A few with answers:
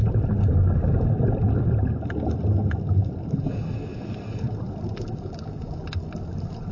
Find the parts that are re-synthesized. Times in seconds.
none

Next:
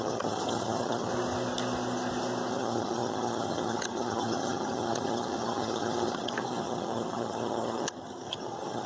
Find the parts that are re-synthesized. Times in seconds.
0.0-1.1 (vocoder, HiFi-GAN); 2.5-8.9

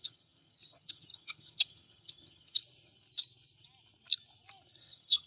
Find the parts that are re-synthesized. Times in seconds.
0.0-2.6 (vocoder, HiFi-GAN); 4.8-5.3

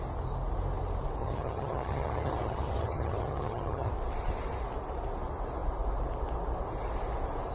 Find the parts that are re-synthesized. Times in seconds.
1.2-3.9 (vocoder, HiFi-GAN)

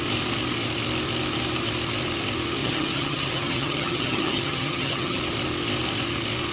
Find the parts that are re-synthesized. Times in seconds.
2.6-5.2 (vocoder, HiFi-GAN)

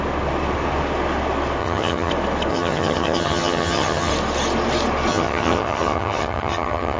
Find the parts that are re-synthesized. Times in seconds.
1.6-2.1 (vocoder, HiFi-GAN); 2.5-4.1; 5.1-7.0